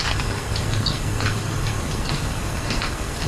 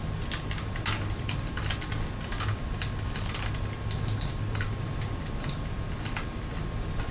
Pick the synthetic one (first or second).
first